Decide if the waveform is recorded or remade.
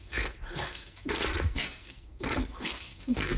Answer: remade